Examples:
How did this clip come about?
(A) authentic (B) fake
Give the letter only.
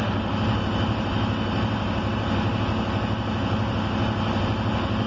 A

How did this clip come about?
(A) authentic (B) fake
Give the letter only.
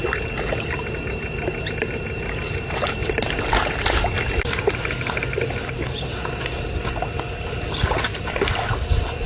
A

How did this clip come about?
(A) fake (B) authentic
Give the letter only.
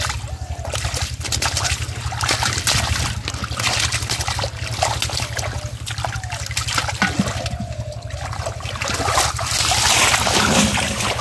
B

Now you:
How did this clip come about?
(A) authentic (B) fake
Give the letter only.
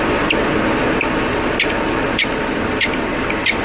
A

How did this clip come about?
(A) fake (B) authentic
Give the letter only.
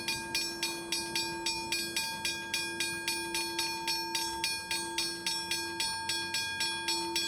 B